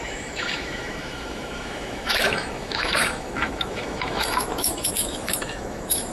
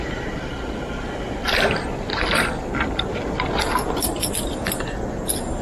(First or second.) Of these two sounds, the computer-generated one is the first